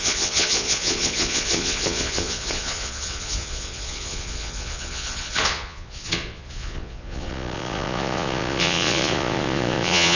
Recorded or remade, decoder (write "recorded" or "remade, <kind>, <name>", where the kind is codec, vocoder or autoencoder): remade, vocoder, Vocos